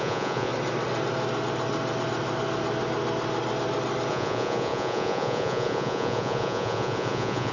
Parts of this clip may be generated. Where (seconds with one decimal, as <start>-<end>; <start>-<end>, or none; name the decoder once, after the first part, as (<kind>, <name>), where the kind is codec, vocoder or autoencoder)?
0.0-0.5 (vocoder, Vocos); 4.1-7.5